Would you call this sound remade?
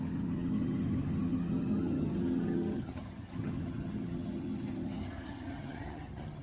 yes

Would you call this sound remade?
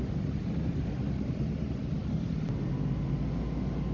no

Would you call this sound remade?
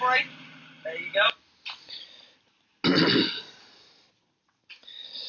no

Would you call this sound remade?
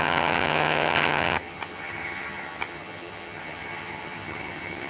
yes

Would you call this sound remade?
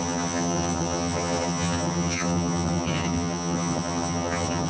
yes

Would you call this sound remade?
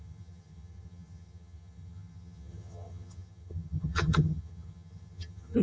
yes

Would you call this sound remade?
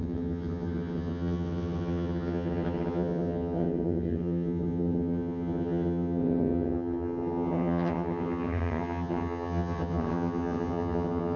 yes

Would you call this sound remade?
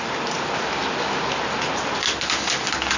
no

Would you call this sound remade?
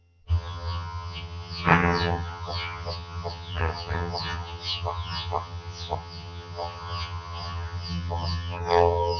yes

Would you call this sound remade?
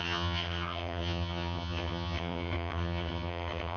yes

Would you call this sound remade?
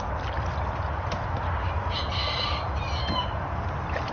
no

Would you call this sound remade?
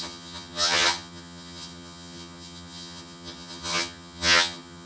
yes